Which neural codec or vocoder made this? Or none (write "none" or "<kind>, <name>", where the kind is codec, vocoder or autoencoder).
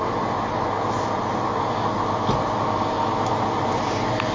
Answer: none